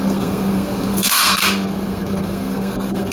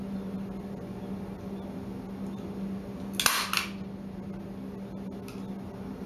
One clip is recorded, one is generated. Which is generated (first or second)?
first